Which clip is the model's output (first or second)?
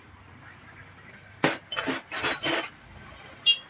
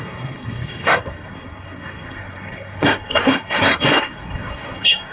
second